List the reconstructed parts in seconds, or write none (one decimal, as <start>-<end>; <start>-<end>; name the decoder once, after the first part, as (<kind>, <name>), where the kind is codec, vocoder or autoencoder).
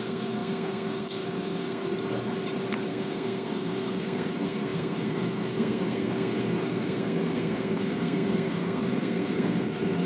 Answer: 0.0-1.9 (codec, SNAC); 2.9-10.1